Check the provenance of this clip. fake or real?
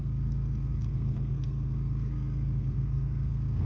fake